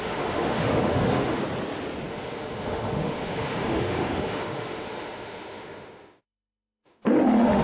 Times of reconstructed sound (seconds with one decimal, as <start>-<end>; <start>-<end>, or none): 0.0-1.4; 2.1-7.6